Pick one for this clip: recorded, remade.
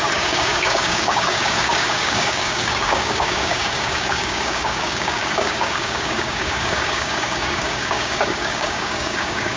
remade